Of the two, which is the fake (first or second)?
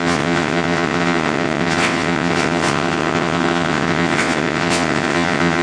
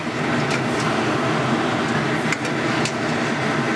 first